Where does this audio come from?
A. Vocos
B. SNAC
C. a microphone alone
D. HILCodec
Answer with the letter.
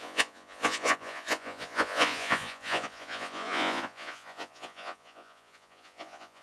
A